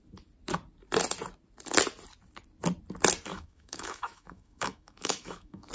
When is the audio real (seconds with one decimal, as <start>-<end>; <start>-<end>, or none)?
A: 0.0-3.3